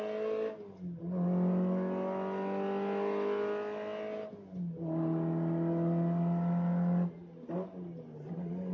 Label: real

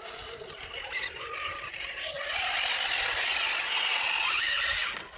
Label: real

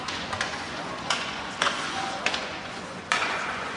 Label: fake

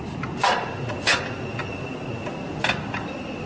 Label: real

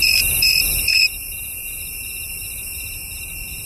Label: fake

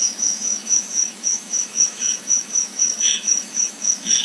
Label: fake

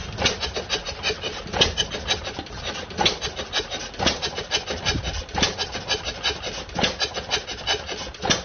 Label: real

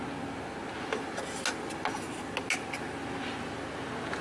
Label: real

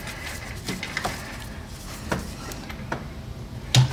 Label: real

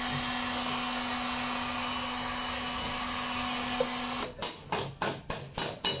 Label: real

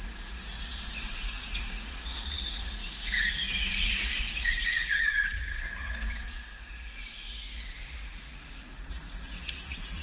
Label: fake